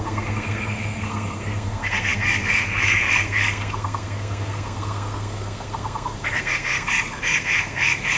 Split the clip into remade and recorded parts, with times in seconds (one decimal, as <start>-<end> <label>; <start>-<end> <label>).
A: 0.0-8.2 remade